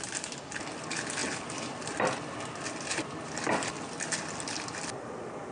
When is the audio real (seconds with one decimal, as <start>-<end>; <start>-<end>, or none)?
0.0-5.5